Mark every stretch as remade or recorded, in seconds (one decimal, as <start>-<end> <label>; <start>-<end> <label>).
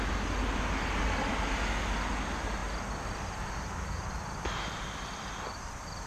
0.0-6.1 recorded